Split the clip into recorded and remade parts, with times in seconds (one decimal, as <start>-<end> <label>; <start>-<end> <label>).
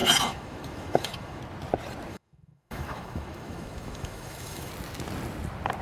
0.0-1.4 remade; 1.4-2.1 recorded; 2.1-4.7 remade; 4.7-5.8 recorded